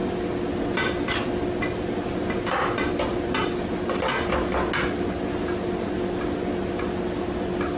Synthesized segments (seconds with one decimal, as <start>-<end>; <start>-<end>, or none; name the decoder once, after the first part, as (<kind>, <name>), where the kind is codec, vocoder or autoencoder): none